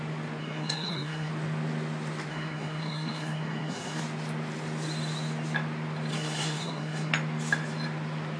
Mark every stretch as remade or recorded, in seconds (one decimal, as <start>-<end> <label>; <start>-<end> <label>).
0.0-0.4 recorded; 0.4-1.3 remade; 1.3-2.3 recorded; 2.3-4.0 remade; 4.0-6.1 recorded; 6.1-7.1 remade; 7.1-8.4 recorded